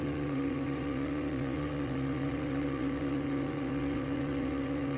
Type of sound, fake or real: fake